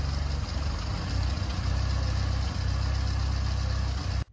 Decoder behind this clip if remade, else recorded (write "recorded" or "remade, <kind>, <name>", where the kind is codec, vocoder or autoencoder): recorded